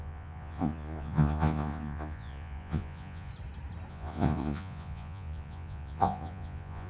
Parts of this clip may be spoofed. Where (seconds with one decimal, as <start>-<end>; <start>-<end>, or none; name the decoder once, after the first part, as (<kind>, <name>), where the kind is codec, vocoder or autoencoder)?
0.0-3.3 (vocoder, Vocos); 3.9-6.9